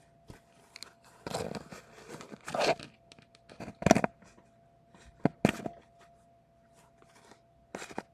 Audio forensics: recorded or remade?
recorded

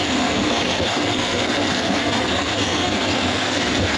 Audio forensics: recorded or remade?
remade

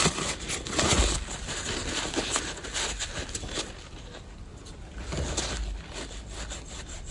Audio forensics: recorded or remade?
recorded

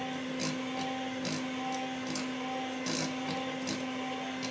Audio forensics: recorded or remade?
recorded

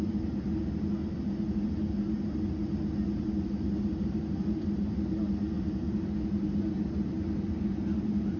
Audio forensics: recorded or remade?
recorded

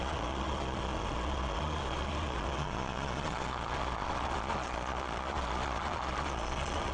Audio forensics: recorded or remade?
remade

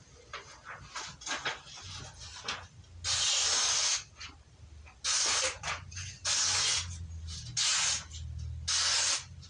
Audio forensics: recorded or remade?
recorded